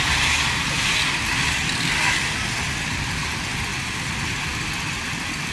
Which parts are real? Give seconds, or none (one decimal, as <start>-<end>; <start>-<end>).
0.0-5.5